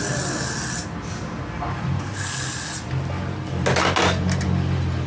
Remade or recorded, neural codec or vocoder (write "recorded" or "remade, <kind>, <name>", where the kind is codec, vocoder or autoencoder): recorded